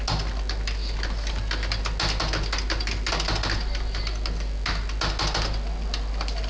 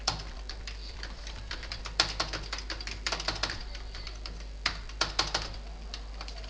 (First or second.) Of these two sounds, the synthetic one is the second